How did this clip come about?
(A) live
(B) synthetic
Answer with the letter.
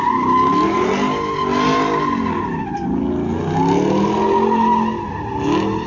A